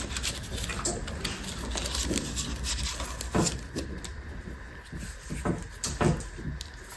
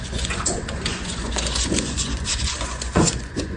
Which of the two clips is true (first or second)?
first